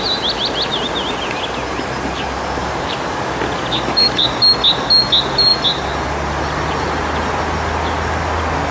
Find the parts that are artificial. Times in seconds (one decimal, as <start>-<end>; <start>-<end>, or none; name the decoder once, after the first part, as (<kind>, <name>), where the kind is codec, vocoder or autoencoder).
2.6-4.4 (vocoder, BigVGAN v2)